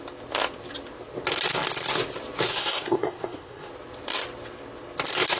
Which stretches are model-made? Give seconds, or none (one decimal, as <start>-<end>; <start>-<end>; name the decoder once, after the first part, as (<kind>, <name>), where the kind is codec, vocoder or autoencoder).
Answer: 2.5-3.7 (codec, SNAC)